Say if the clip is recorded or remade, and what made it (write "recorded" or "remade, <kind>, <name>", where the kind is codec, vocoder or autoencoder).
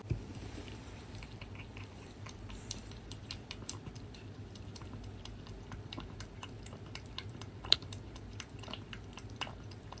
remade, vocoder, BigVGAN v2